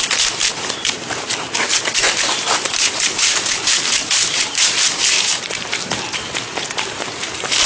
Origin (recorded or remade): remade